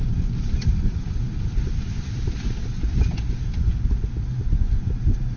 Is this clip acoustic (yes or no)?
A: yes